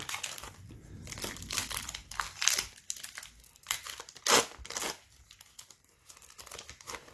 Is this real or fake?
real